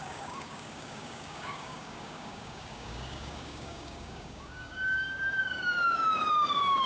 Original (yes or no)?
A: no